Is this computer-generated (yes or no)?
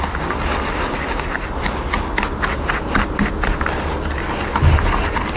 no